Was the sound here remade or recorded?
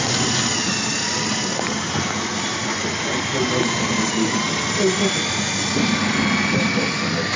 recorded